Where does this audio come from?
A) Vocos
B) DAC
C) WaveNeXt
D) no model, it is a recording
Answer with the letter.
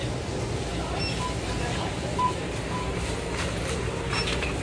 D